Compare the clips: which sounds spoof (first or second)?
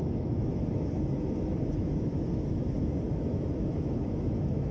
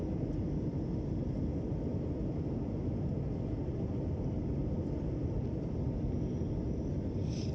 first